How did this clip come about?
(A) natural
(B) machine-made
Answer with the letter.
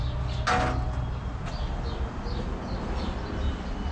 A